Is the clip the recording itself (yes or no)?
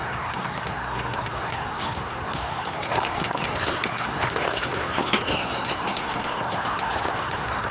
no